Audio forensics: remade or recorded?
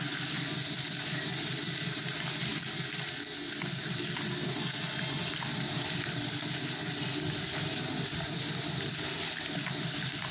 recorded